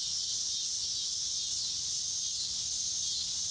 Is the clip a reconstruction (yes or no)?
no